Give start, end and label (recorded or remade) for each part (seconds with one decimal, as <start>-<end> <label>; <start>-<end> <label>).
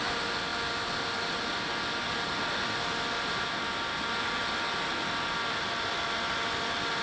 0.0-7.0 recorded